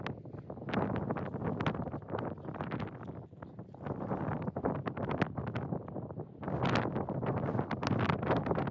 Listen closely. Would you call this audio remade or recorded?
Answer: recorded